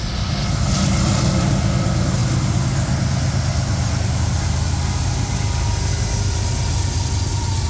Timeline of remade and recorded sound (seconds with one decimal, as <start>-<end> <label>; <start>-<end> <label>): 0.0-7.7 recorded